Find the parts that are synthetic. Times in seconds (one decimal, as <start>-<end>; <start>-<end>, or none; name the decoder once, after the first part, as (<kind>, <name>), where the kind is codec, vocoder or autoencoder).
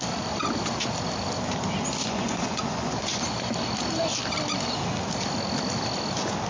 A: 2.0-3.2 (vocoder, Vocos)